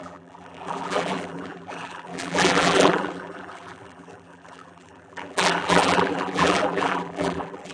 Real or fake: fake